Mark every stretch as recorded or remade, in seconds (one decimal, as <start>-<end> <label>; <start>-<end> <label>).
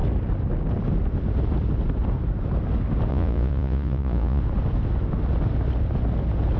0.0-3.1 recorded; 3.1-4.4 remade; 4.4-6.6 recorded